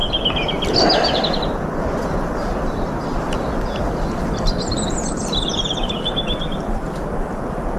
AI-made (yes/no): no